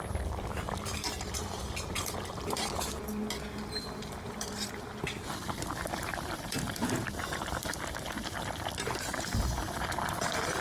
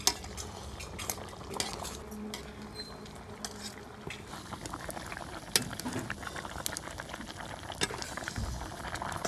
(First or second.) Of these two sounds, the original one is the second